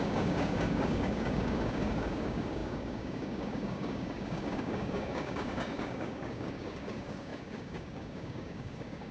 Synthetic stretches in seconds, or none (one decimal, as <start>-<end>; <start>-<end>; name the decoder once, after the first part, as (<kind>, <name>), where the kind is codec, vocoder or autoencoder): 0.0-9.1 (codec, DAC)